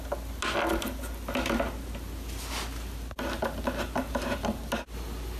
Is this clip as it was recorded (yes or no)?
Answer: yes